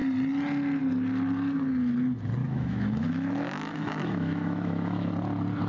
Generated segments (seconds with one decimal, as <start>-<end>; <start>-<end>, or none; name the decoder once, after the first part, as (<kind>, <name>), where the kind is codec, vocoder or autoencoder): 2.4-5.1 (autoencoder, DAC-VAE)

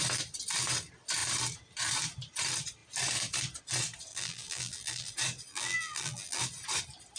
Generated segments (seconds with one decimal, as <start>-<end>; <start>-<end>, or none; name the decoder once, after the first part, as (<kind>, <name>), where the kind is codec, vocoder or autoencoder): 4.1-5.1 (vocoder, BigVGAN v2); 5.5-6.4

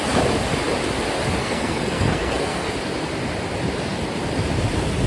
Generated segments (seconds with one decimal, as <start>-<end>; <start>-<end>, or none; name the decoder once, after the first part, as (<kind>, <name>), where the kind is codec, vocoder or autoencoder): 1.4-2.7 (codec, SNAC)

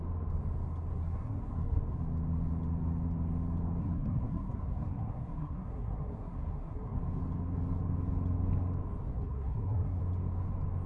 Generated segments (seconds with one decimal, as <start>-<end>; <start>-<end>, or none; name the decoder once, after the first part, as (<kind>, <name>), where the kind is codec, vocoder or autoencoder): 0.9-1.8 (codec, SNAC); 3.8-7.0; 9.1-10.0

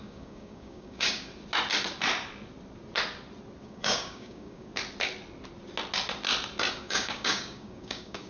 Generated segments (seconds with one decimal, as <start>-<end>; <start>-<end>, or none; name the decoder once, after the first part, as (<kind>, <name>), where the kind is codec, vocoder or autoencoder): 0.0-1.3 (codec, DAC); 3.6-4.7; 6.7-8.3

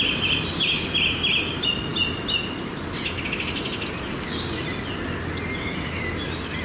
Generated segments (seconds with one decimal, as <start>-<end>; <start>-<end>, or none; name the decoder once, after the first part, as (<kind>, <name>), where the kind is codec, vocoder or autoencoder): none